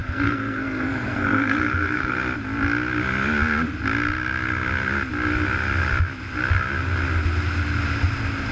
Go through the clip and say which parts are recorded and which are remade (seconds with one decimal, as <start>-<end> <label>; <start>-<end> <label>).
0.0-2.1 remade; 2.1-8.5 recorded